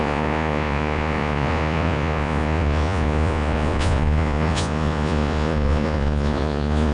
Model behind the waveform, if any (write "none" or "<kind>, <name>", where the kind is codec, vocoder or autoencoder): vocoder, Vocos